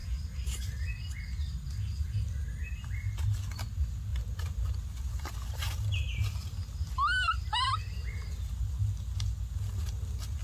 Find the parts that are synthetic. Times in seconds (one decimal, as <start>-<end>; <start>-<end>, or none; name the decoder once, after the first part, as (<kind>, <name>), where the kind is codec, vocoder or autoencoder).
none